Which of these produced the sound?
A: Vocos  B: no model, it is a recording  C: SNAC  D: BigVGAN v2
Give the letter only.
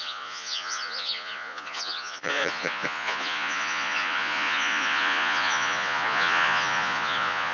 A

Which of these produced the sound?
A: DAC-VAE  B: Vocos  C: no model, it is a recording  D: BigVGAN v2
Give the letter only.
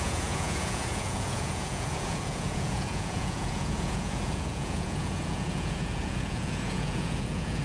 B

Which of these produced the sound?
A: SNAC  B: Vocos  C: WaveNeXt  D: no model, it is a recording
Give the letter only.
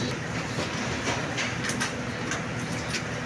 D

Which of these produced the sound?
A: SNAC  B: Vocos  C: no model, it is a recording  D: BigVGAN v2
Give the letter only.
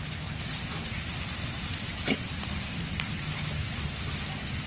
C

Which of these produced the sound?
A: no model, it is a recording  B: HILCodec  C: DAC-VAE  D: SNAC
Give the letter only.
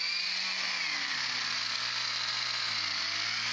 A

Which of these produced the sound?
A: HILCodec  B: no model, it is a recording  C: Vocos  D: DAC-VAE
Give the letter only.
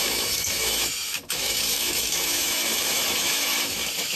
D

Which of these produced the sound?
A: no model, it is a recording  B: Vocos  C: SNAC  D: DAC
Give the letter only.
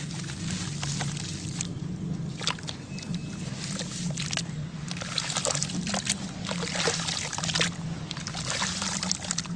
A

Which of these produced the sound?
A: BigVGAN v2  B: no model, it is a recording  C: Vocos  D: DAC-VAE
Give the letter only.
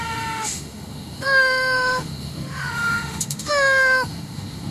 D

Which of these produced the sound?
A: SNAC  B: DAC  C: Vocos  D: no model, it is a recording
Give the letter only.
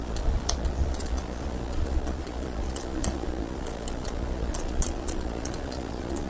C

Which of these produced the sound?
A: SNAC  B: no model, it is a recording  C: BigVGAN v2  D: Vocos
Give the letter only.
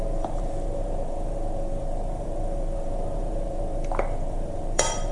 C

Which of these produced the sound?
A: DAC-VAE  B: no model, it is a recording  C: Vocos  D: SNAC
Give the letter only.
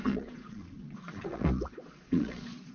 C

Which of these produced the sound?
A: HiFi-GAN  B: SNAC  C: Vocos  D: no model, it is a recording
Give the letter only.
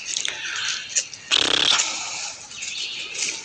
D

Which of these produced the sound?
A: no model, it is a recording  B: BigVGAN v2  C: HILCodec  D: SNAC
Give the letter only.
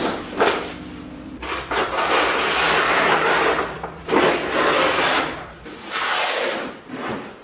B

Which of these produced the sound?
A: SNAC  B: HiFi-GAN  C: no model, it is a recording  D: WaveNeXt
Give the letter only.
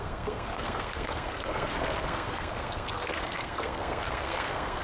A